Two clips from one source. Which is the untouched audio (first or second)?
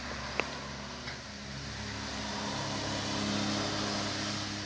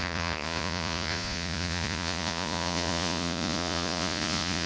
first